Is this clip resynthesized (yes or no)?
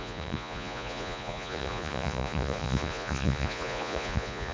yes